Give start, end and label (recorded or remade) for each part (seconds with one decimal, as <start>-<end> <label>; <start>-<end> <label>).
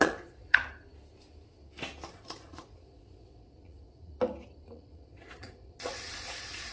0.0-0.6 remade; 0.6-2.1 recorded; 2.1-4.1 remade; 4.1-4.7 recorded; 4.7-6.7 remade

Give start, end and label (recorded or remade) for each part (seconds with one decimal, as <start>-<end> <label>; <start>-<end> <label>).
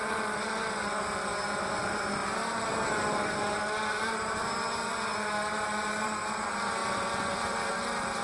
0.0-8.2 remade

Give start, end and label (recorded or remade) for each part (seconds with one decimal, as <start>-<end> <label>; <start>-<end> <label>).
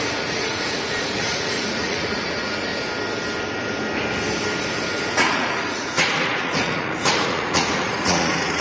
0.0-2.7 remade; 2.7-5.1 recorded; 5.1-8.6 remade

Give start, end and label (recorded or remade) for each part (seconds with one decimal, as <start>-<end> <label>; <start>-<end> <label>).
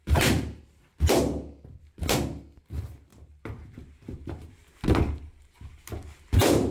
0.0-0.6 remade; 0.6-6.7 recorded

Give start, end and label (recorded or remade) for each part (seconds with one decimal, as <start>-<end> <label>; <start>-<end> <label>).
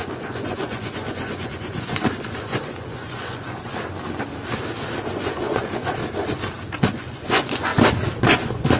0.0-3.7 remade; 3.7-5.1 recorded; 5.1-6.0 remade; 6.0-6.8 recorded; 6.8-7.7 remade; 7.7-8.2 recorded; 8.2-8.8 remade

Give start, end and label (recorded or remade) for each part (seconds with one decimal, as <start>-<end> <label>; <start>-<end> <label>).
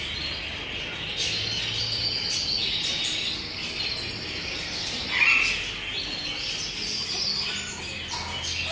0.0-8.7 recorded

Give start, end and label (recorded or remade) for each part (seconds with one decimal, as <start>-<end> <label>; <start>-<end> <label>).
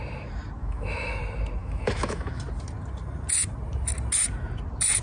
0.0-0.6 recorded; 0.6-1.2 remade; 1.2-1.6 recorded; 1.6-2.4 remade; 2.4-5.0 recorded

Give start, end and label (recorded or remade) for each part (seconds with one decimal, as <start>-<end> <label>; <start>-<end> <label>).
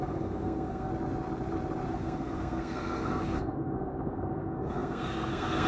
0.0-0.9 remade; 0.9-1.9 recorded; 1.9-5.7 remade